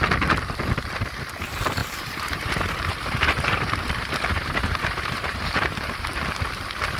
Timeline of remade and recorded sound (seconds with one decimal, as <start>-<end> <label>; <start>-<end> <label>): 0.0-1.8 recorded; 1.8-6.0 remade; 6.0-7.0 recorded